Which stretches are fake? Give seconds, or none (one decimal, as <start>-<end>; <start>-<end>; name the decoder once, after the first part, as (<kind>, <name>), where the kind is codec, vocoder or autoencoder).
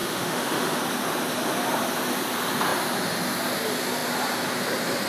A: 0.0-0.8 (autoencoder, DAC-VAE)